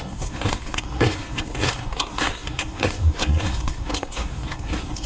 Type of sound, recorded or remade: remade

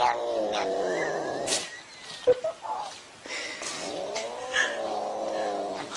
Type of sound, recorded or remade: recorded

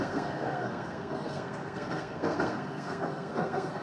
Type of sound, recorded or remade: remade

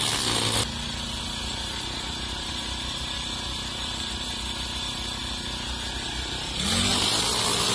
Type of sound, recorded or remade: recorded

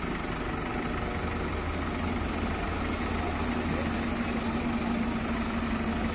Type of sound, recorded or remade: recorded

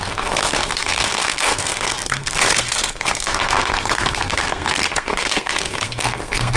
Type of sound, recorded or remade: remade